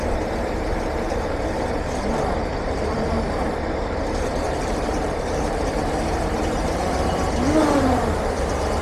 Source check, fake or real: fake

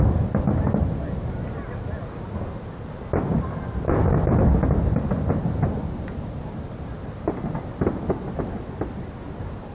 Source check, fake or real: real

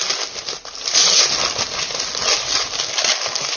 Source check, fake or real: real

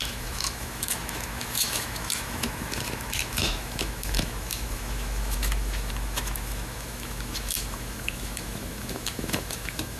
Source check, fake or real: fake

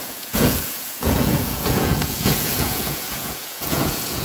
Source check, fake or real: fake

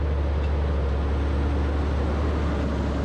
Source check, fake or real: real